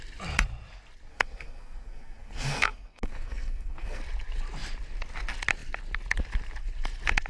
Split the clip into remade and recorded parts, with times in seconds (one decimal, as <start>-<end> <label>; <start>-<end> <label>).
0.0-1.1 recorded; 1.1-4.0 remade; 4.0-7.3 recorded